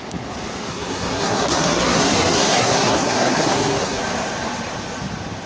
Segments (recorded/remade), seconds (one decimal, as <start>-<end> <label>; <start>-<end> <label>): 0.0-0.7 recorded; 0.7-4.0 remade; 4.0-5.5 recorded